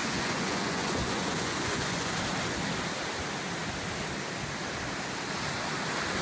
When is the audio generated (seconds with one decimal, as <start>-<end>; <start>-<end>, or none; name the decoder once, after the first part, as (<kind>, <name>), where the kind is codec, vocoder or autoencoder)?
0.0-2.1 (vocoder, Vocos)